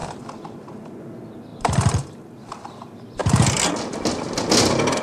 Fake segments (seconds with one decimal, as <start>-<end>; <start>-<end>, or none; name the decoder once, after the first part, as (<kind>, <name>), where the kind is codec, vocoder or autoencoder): 0.0-1.0 (vocoder, BigVGAN v2); 1.5-2.1; 3.2-3.7